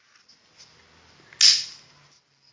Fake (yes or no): no